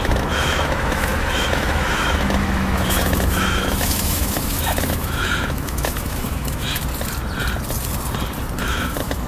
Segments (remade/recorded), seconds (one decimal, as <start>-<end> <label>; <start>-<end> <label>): 0.0-6.8 remade; 6.8-8.6 recorded; 8.6-9.3 remade